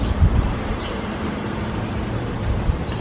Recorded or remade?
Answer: remade